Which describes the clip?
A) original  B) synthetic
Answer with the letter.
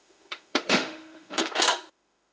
B